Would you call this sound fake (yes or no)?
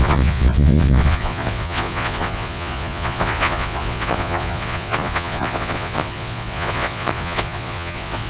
yes